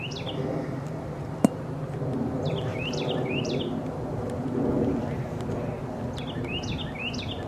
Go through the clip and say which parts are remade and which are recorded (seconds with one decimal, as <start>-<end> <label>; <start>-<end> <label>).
0.0-2.7 recorded; 2.7-3.6 remade; 3.6-7.5 recorded